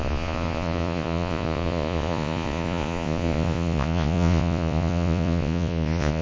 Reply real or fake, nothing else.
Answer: fake